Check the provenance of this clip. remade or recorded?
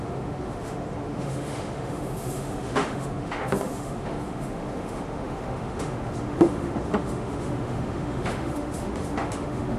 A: remade